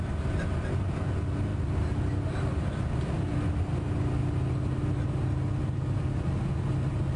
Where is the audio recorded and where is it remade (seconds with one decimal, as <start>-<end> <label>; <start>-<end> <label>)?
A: 0.0-7.2 recorded